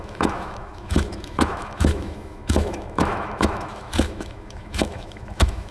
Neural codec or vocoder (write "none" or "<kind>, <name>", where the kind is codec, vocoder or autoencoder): autoencoder, DAC-VAE